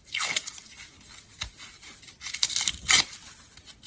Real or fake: real